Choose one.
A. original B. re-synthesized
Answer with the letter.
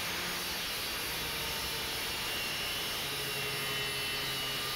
A